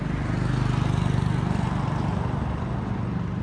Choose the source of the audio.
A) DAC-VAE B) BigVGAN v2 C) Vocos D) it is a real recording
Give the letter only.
D